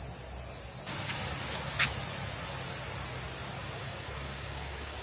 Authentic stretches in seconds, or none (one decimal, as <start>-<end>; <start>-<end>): 0.0-3.6